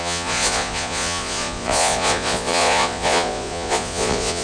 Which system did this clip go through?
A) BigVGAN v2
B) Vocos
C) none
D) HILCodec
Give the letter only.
B